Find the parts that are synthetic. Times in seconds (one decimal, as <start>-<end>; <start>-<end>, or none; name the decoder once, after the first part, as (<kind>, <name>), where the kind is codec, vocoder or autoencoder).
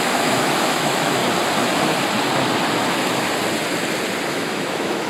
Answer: 0.0-1.2 (autoencoder, DAC-VAE); 4.3-5.1